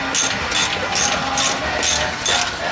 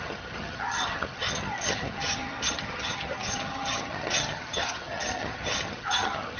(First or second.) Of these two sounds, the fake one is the second